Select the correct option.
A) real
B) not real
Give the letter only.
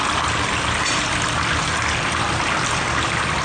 A